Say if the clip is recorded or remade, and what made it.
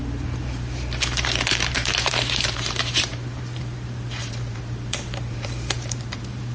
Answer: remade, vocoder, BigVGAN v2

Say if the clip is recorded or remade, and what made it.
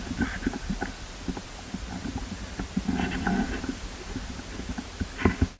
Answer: recorded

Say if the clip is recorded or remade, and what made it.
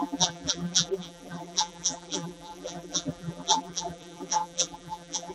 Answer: remade, vocoder, BigVGAN v2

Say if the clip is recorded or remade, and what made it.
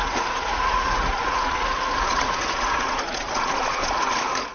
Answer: remade, vocoder, Vocos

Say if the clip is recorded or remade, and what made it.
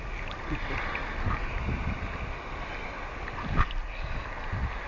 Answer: recorded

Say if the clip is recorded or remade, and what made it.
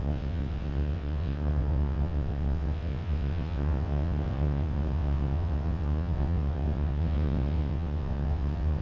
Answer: remade, vocoder, WaveNeXt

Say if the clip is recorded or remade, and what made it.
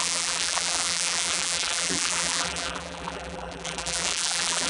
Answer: remade, vocoder, BigVGAN v2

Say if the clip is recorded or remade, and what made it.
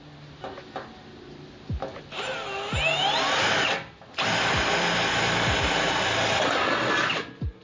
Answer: recorded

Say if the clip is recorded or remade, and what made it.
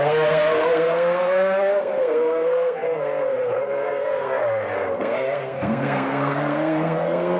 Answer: remade, codec, SNAC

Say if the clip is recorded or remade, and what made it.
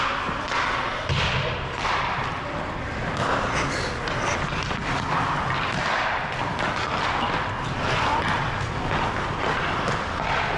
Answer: recorded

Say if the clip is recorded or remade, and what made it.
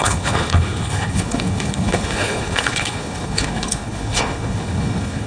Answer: remade, codec, HILCodec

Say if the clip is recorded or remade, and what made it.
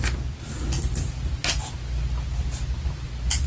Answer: recorded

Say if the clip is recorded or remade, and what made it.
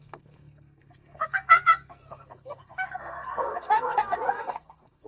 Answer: remade, codec, SNAC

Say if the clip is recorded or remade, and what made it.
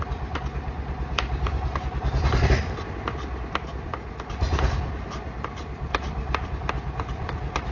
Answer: recorded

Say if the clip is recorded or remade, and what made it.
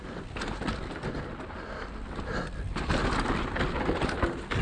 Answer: recorded